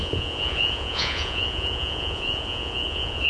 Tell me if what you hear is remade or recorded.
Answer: remade